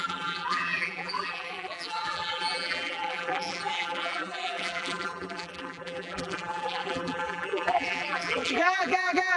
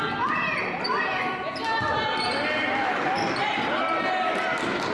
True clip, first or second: second